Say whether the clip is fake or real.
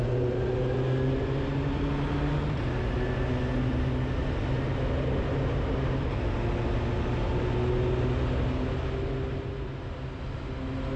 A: real